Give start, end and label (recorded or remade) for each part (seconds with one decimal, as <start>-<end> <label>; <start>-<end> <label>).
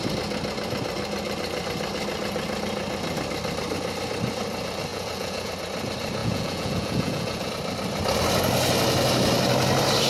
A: 0.0-4.9 recorded; 4.9-5.5 remade; 5.5-6.2 recorded; 6.2-7.5 remade; 7.5-10.1 recorded